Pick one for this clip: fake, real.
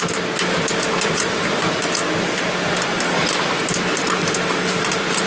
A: real